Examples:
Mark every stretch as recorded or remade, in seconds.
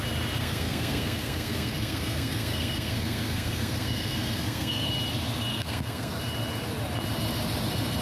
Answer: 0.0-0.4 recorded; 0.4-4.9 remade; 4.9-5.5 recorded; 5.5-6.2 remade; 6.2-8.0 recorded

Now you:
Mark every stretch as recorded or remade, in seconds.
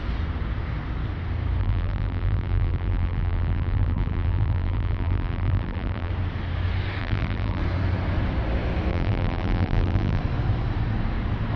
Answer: 0.0-1.6 recorded; 1.6-6.1 remade; 6.1-7.0 recorded; 7.0-7.6 remade; 7.6-8.9 recorded; 8.9-10.2 remade; 10.2-11.6 recorded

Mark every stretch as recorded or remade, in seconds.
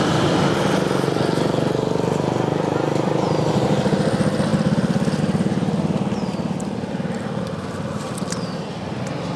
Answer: 0.0-9.4 recorded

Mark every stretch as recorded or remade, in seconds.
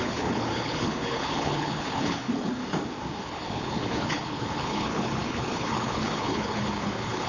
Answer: 0.0-2.6 remade; 2.6-3.2 recorded; 3.2-7.3 remade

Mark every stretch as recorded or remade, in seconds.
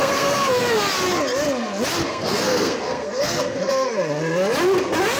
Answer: 0.0-0.6 remade; 0.6-2.0 recorded; 2.0-4.1 remade; 4.1-5.2 recorded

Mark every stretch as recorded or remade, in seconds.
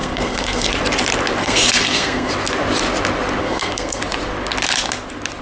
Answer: 0.0-0.7 remade; 0.7-1.4 recorded; 1.4-2.3 remade; 2.3-3.4 recorded; 3.4-4.0 remade; 4.0-5.4 recorded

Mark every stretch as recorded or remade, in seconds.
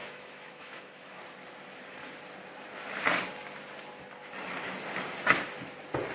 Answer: 0.0-1.2 remade; 1.2-6.1 recorded